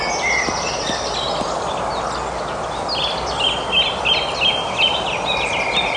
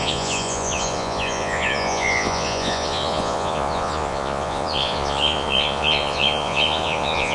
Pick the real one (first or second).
first